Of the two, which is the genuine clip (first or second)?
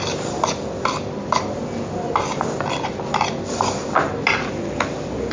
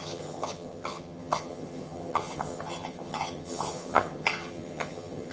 first